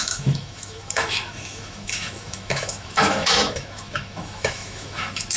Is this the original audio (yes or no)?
no